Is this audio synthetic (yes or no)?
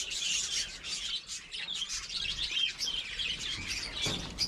no